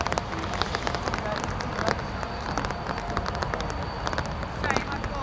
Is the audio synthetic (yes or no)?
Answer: no